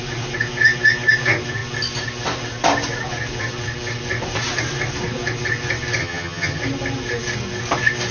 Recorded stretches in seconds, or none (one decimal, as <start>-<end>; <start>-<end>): 0.0-6.0; 6.6-8.1